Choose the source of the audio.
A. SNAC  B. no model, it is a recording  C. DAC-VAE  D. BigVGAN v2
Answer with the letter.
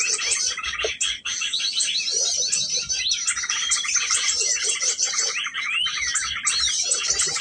D